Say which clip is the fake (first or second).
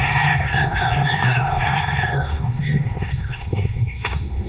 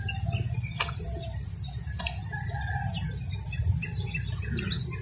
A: first